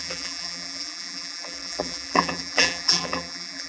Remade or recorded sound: remade